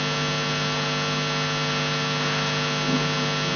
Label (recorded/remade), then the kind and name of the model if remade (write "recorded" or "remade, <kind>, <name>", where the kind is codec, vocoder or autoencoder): recorded